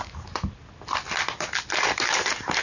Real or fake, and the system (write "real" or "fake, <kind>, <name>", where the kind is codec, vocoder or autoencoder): real